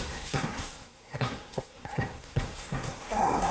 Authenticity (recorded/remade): remade